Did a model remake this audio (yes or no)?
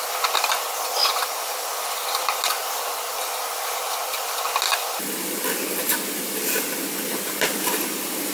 no